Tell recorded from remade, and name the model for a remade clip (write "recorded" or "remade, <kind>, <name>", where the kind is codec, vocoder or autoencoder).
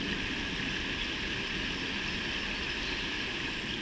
recorded